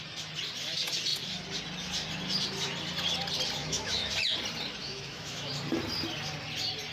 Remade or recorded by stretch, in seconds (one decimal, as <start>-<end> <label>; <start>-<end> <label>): 0.0-3.6 recorded; 3.6-4.1 remade; 4.1-4.8 recorded; 4.8-5.5 remade; 5.5-6.9 recorded